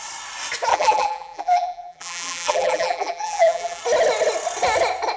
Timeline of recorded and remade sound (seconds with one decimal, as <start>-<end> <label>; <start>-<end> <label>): 0.0-0.7 recorded; 0.7-3.8 remade; 3.8-5.2 recorded